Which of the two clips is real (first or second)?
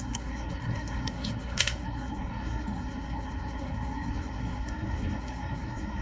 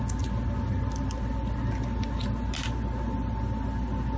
second